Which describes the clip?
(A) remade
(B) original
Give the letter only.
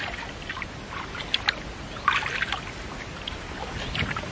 B